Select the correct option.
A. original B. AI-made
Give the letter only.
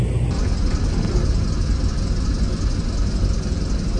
A